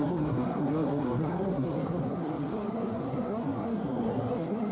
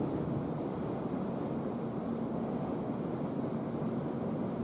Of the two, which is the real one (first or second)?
second